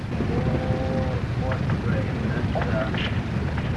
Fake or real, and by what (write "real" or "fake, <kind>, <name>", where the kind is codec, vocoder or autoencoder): real